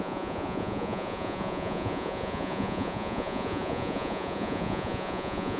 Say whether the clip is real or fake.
fake